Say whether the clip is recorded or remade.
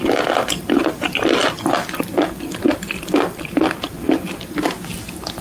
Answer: recorded